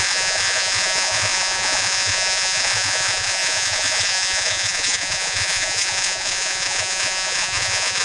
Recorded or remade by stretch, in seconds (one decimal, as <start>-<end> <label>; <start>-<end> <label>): 0.0-8.0 remade